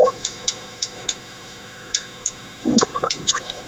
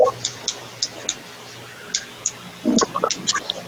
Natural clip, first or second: second